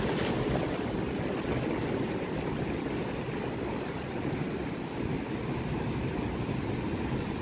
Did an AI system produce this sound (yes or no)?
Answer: no